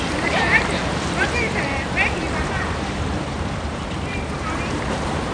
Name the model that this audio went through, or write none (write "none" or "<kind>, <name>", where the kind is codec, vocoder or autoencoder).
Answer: vocoder, BigVGAN v2